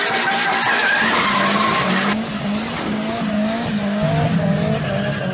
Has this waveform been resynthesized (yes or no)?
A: no